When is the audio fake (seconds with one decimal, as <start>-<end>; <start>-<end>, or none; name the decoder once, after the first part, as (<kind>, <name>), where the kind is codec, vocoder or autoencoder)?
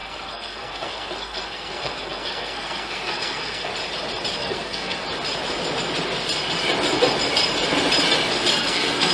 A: 0.0-3.7 (codec, SNAC); 4.4-5.1; 8.5-9.1